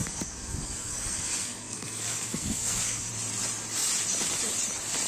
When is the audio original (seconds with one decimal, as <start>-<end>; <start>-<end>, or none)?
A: 3.1-5.1